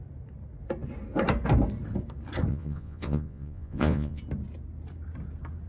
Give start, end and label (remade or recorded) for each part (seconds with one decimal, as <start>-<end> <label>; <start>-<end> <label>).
0.0-2.5 recorded; 2.5-4.2 remade; 4.2-5.7 recorded